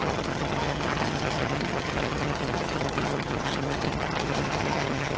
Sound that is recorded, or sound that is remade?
remade